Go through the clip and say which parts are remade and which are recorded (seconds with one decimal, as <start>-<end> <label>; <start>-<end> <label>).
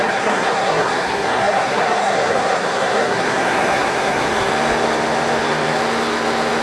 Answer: 0.0-4.5 remade; 4.5-6.6 recorded